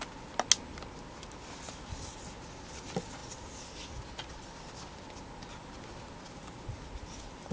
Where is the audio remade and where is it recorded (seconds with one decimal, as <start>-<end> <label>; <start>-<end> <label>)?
0.0-7.5 recorded